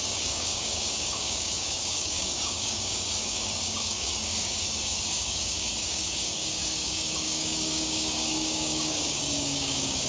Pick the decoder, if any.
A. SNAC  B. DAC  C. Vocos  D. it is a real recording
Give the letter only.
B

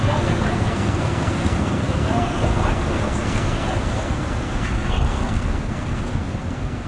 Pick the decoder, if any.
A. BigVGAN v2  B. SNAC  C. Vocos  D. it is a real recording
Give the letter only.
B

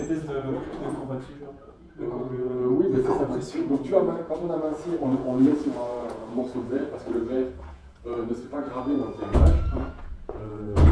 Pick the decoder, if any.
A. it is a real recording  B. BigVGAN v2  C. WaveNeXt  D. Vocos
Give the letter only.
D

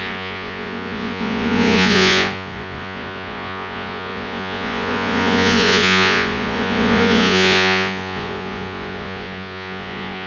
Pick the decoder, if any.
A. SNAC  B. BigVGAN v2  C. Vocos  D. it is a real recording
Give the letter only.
C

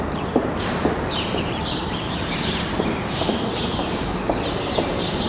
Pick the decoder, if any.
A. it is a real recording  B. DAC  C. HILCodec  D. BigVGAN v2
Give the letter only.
D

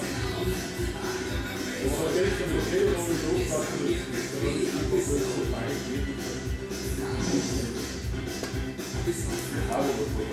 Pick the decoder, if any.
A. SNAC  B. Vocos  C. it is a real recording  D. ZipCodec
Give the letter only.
C